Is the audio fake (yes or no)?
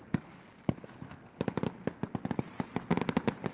no